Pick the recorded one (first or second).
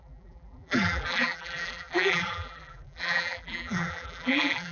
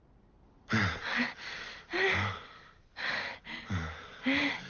second